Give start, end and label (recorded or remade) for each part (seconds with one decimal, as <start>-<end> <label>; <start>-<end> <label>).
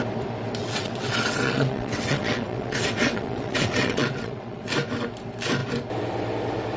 0.0-0.6 recorded; 0.6-4.7 remade; 4.7-6.8 recorded